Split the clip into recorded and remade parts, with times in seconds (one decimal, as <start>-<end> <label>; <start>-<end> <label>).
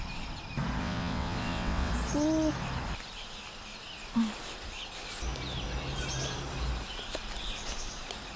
0.0-0.8 recorded; 0.8-1.9 remade; 1.9-8.4 recorded